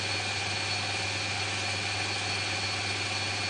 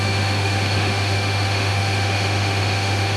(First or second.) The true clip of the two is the first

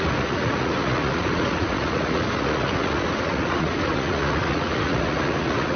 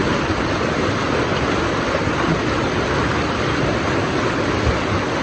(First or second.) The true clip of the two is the second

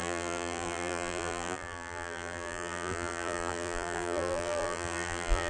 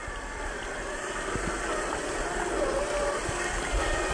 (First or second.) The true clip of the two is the second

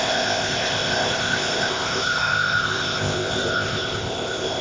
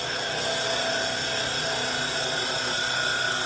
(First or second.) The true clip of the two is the second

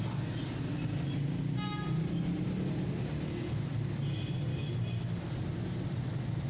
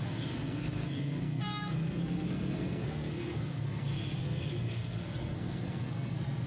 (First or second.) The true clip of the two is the first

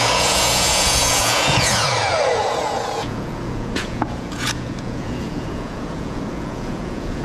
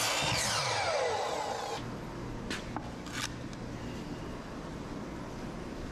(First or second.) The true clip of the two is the second